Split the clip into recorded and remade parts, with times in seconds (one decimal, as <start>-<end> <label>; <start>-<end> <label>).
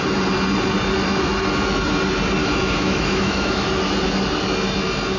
0.0-2.4 recorded; 2.4-3.8 remade; 3.8-5.2 recorded